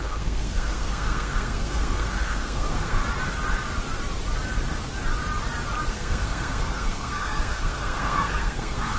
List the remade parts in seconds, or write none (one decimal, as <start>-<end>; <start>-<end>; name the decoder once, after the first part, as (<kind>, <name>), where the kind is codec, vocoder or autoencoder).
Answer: 0.0-3.0 (codec, SNAC); 5.9-9.0